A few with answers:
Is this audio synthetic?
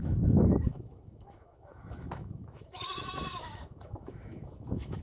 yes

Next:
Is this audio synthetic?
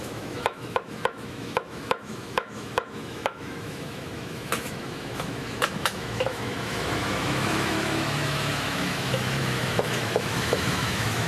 yes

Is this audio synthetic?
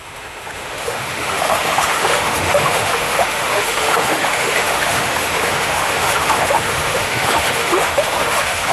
yes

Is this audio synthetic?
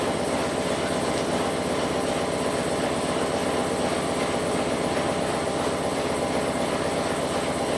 no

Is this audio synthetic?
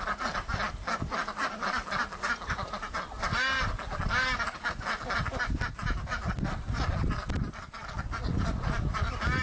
no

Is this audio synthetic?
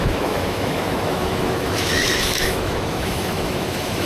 yes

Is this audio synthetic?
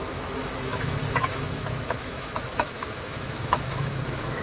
yes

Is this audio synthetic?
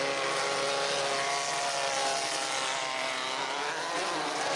no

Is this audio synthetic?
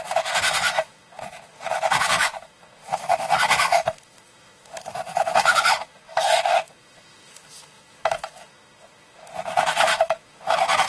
yes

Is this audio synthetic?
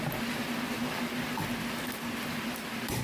no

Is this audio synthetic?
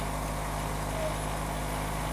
no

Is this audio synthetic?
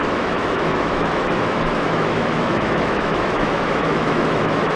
yes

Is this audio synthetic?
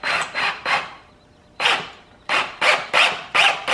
no